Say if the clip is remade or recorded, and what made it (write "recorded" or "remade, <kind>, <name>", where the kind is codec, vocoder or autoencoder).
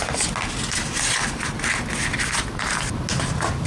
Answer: recorded